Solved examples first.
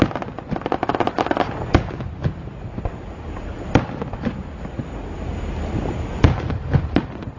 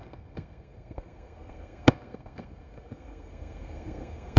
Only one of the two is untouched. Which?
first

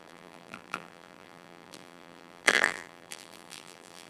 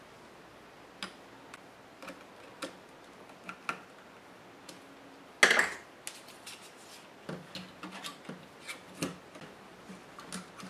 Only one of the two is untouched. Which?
second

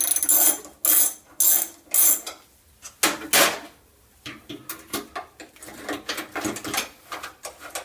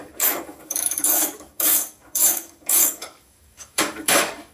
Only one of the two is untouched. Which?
first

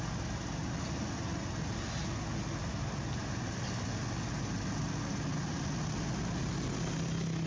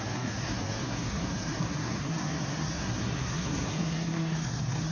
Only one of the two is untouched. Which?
first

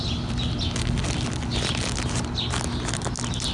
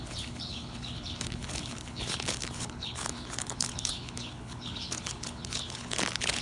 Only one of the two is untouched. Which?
first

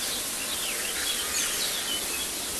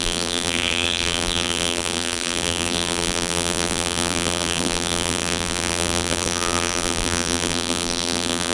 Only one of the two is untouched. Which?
first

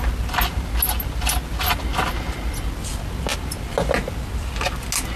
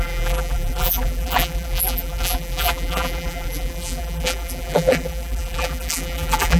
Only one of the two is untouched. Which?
first